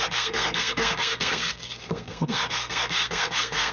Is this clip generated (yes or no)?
yes